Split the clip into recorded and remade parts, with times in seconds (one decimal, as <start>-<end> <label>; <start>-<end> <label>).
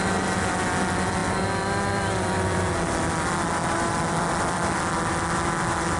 0.0-6.0 recorded